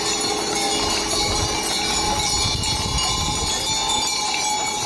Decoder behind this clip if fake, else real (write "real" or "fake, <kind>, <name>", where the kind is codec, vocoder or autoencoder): real